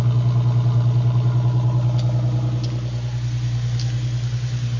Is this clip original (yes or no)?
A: yes